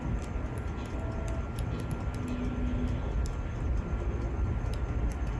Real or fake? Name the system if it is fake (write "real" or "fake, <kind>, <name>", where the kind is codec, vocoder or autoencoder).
real